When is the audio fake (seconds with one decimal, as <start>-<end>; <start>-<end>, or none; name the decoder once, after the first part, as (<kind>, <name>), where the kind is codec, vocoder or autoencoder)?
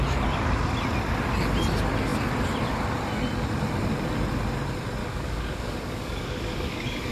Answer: 5.0-7.1 (codec, DAC)